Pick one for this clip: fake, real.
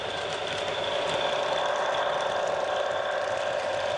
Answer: real